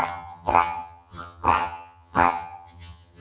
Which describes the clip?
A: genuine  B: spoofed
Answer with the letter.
B